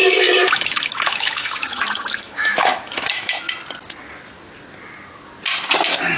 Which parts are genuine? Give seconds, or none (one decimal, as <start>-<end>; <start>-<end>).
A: 3.5-6.2